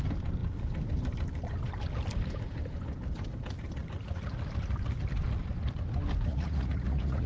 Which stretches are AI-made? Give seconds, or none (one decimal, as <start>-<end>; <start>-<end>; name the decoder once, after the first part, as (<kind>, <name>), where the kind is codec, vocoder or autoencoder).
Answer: 6.3-7.3 (vocoder, Vocos)